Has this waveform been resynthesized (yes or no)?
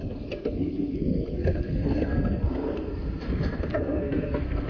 yes